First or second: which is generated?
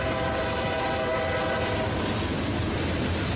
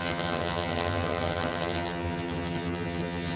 second